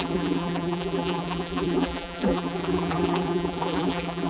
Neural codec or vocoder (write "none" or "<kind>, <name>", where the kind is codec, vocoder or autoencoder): vocoder, BigVGAN v2